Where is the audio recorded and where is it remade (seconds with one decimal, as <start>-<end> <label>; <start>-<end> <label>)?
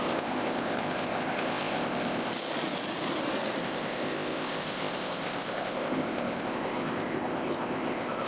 0.0-2.3 remade; 2.3-3.6 recorded; 3.6-8.3 remade